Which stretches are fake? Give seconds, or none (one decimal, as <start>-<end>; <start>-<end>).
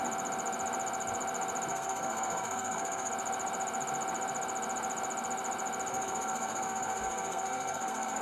1.7-3.1; 5.9-8.2